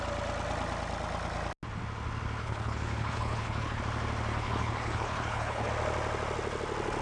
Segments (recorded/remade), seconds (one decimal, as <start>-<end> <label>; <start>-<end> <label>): 0.0-2.4 recorded; 2.4-3.8 remade; 3.8-4.3 recorded; 4.3-5.7 remade; 5.7-7.0 recorded

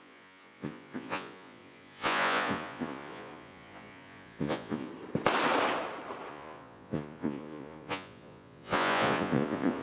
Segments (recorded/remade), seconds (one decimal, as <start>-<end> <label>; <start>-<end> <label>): 0.0-4.9 remade; 4.9-6.3 recorded; 6.3-9.8 remade

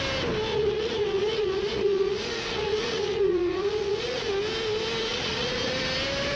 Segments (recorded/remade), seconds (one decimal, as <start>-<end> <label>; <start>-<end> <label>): 0.0-0.5 recorded; 0.5-4.3 remade; 4.3-5.1 recorded; 5.1-5.7 remade; 5.7-6.4 recorded

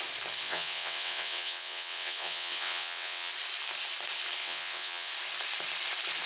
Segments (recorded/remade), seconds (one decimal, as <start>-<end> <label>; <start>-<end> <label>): 0.0-0.4 recorded; 0.4-3.3 remade; 3.3-4.4 recorded; 4.4-5.1 remade; 5.1-6.3 recorded

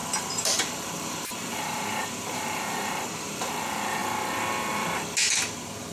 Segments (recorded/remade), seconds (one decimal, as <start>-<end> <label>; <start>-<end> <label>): 0.0-3.5 remade; 3.5-5.9 recorded

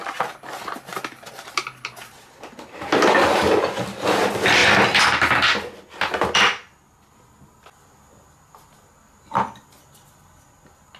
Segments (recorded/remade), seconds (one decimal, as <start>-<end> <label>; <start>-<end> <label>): 0.0-11.0 recorded

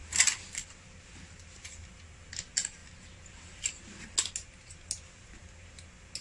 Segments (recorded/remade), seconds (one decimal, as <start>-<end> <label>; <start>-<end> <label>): 0.0-1.7 remade; 1.7-6.2 recorded

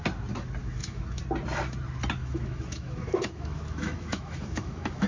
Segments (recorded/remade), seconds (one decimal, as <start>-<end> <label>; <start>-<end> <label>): 0.0-0.6 recorded; 0.6-1.2 remade; 1.2-2.2 recorded; 2.2-5.1 remade